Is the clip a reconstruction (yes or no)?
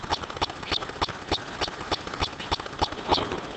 no